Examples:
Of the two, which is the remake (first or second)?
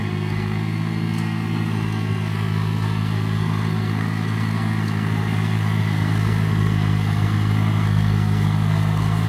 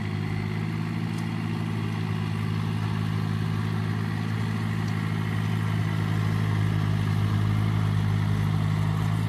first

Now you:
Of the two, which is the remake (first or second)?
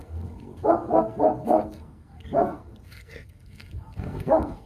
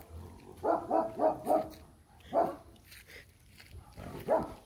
first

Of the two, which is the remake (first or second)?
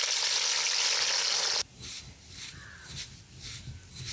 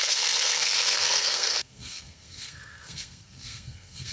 second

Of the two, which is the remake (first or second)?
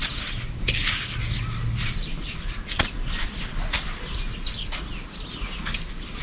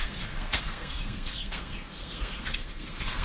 second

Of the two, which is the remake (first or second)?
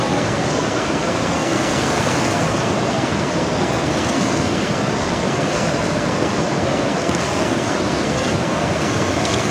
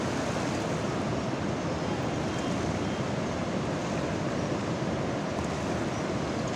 first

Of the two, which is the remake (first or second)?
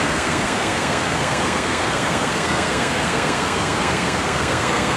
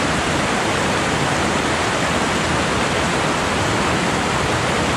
first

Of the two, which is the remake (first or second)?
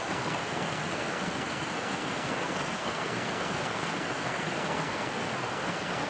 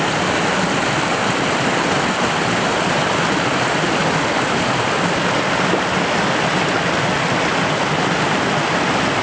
first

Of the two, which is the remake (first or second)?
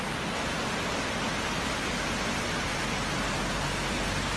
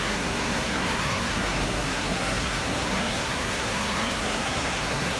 second